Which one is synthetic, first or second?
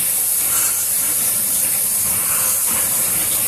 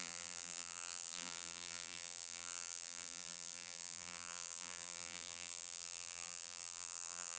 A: second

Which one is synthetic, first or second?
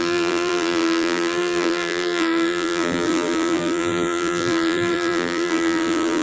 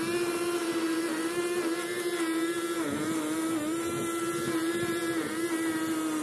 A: first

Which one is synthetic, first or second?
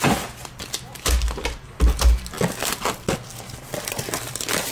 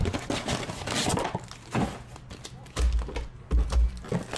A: first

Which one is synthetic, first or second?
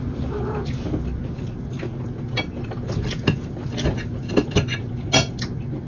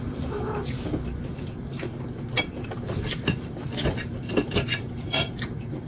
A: second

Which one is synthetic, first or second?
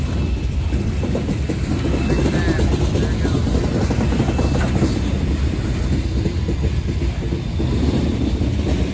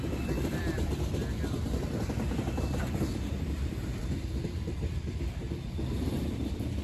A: second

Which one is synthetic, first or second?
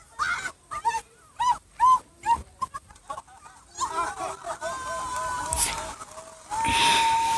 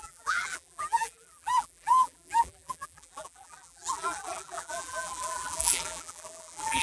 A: second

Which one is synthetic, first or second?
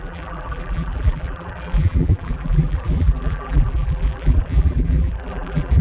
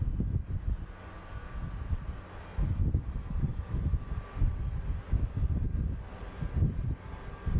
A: first